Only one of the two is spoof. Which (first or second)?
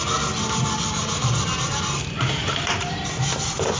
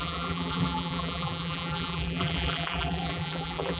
second